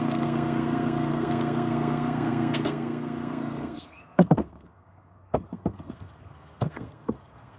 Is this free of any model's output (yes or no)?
no